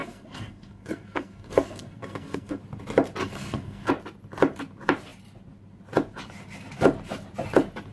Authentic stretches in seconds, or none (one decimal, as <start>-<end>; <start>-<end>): 2.6-3.2; 3.9-7.9